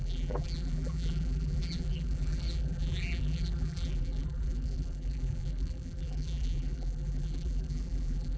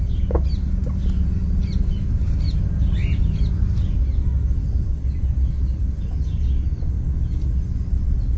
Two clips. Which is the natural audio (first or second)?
second